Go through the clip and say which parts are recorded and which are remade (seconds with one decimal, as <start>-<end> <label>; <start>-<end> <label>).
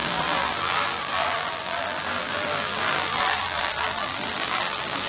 0.0-5.1 remade